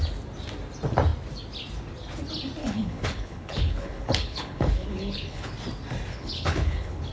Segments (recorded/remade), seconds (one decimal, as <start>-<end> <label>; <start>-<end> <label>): 0.0-2.6 recorded; 2.6-5.5 remade; 5.5-6.1 recorded; 6.1-7.1 remade